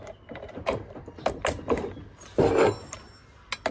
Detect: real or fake real